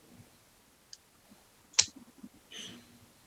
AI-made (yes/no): no